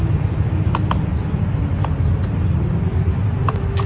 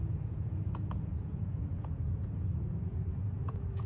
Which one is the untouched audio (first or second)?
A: first